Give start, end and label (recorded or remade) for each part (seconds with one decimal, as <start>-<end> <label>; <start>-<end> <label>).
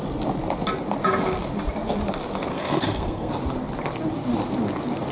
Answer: 0.0-2.5 recorded; 2.5-3.3 remade; 3.3-5.1 recorded